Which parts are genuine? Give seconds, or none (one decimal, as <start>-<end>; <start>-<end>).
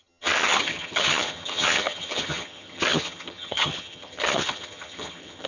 none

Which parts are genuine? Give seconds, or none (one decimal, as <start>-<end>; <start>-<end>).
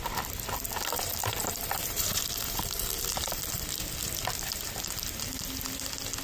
0.0-1.4; 4.9-6.2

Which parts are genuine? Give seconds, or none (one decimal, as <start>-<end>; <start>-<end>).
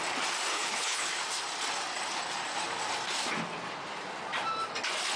0.0-0.5; 1.1-5.2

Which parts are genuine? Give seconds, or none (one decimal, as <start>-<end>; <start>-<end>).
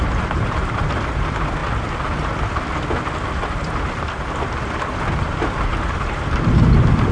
0.0-7.1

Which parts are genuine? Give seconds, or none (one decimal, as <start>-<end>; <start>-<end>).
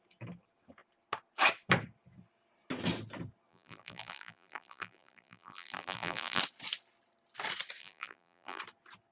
0.0-3.5; 6.4-7.8; 8.6-9.1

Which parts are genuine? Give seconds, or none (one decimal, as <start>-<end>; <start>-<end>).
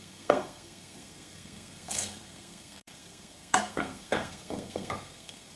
none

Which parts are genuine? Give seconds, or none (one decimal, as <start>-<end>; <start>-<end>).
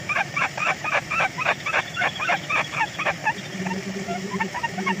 3.2-4.0